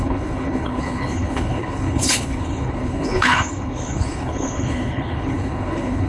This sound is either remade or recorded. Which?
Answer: remade